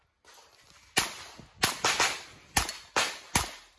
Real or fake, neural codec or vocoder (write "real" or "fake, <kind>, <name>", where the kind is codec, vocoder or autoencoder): real